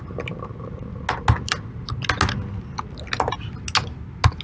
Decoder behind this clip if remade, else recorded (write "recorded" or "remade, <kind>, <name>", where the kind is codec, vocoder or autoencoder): recorded